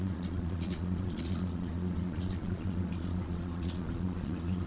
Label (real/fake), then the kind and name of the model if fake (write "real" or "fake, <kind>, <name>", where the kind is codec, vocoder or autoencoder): fake, vocoder, Vocos